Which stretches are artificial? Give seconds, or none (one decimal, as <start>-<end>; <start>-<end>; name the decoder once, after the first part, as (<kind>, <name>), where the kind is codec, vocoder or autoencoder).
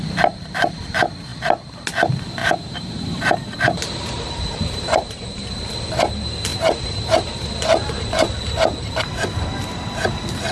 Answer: 2.4-5.6 (vocoder, BigVGAN v2); 6.5-7.5